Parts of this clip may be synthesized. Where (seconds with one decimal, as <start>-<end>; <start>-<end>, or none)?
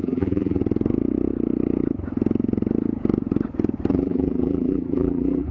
0.0-0.6; 3.9-5.5